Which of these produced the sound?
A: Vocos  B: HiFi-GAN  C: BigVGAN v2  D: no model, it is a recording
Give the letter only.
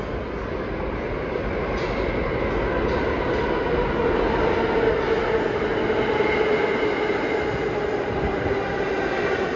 D